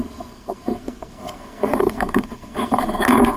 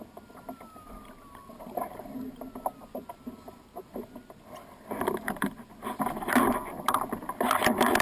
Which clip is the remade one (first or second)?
first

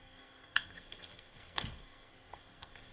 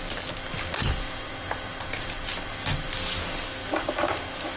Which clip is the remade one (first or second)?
first